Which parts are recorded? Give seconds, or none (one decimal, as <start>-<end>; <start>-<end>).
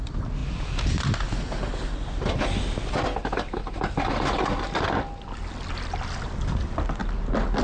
0.0-7.6